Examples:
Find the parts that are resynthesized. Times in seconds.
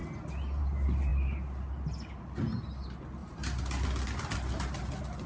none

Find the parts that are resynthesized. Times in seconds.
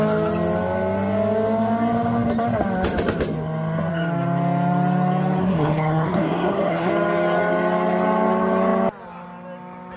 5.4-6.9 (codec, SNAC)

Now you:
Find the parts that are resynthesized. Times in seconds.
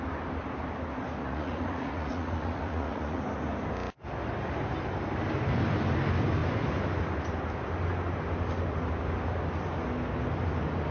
1.2-3.2 (vocoder, Vocos)